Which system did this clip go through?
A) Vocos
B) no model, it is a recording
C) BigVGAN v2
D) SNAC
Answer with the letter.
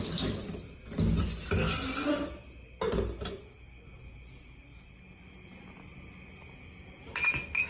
B